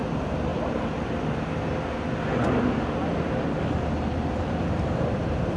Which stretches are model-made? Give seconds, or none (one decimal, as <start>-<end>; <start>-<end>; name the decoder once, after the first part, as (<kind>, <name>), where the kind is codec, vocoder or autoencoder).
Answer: 0.0-0.5 (vocoder, BigVGAN v2); 3.9-5.6

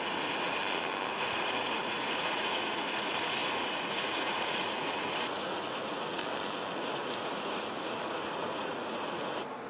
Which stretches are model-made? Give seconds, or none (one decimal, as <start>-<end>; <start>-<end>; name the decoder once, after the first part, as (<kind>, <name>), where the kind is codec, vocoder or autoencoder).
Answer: 0.0-0.6 (vocoder, Vocos); 1.1-6.2; 6.8-9.7